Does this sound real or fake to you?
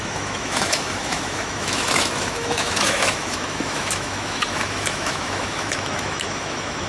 fake